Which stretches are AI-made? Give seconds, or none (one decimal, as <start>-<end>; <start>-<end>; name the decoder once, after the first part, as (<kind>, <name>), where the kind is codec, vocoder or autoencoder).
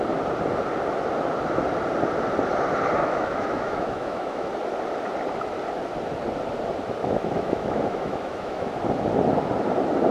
3.0-4.5 (autoencoder, DAC-VAE); 7.0-8.7